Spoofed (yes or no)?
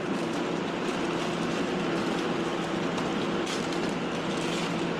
no